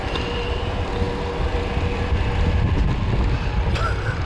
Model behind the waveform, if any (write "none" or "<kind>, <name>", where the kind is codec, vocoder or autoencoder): none